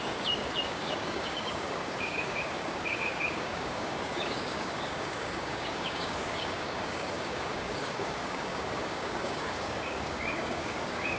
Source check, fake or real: fake